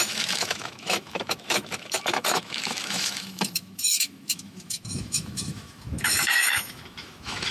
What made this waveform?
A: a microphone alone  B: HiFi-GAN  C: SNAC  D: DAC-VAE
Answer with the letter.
D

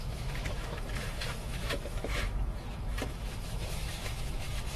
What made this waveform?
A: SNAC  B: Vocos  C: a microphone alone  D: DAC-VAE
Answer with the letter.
D